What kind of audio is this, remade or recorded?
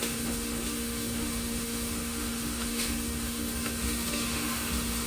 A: remade